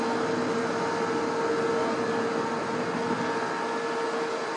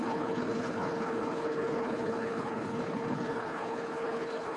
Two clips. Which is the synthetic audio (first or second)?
second